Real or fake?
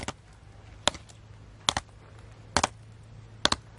real